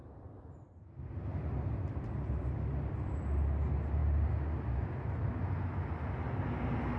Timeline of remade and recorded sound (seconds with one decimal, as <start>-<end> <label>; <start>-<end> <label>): 0.0-0.7 remade; 0.7-1.3 recorded; 1.3-3.2 remade; 3.2-7.0 recorded